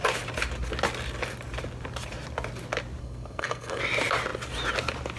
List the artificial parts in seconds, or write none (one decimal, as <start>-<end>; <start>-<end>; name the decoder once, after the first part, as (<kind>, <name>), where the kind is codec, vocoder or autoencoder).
3.0-3.8 (codec, SNAC)